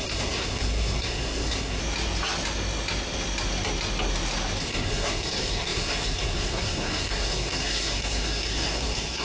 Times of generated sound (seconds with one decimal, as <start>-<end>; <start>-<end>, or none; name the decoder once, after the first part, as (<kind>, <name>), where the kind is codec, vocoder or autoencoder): 0.0-1.8 (codec, SNAC); 4.6-9.2